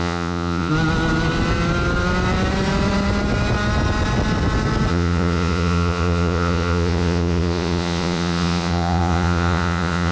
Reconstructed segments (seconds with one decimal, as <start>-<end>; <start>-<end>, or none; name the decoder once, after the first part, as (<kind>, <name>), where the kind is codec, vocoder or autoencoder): 0.0-0.7 (vocoder, Vocos); 4.9-10.1